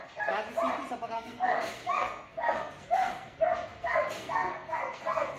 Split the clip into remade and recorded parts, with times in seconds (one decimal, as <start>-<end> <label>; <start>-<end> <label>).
0.0-0.4 remade; 0.4-1.1 recorded; 1.1-5.4 remade